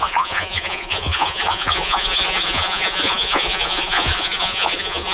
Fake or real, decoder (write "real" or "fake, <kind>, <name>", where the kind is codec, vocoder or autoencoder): fake, vocoder, Vocos